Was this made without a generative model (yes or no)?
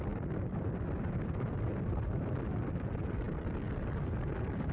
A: yes